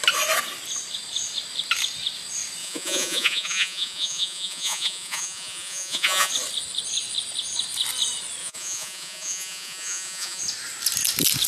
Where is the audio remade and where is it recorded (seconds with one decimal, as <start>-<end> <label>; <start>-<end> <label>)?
0.0-2.6 recorded; 2.6-6.3 remade; 6.3-8.4 recorded; 8.4-10.4 remade; 10.4-11.5 recorded